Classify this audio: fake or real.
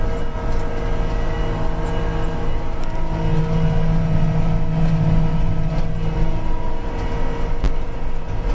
real